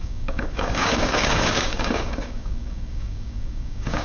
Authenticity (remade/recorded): remade